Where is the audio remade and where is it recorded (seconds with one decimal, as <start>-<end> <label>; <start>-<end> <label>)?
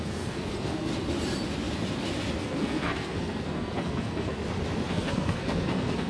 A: 0.0-0.9 remade; 0.9-2.4 recorded; 2.4-4.4 remade; 4.4-4.9 recorded; 4.9-6.1 remade